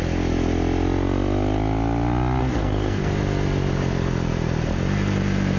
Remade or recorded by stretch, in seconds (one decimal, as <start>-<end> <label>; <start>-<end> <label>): 0.0-2.4 recorded; 2.4-3.1 remade; 3.1-5.6 recorded